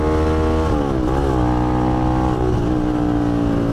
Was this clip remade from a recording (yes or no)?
no